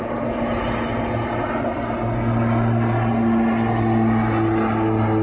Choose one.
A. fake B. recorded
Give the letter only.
B